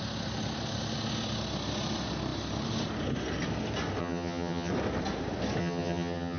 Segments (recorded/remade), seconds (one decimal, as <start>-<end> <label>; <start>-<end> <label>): 0.0-4.0 recorded; 4.0-4.7 remade; 4.7-5.6 recorded; 5.6-6.4 remade